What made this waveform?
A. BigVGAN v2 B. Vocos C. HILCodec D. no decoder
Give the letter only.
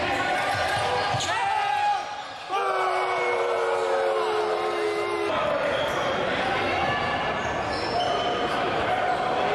D